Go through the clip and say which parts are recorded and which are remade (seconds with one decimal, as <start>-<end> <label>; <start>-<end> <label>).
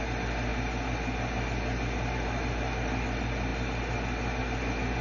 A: 0.0-5.0 recorded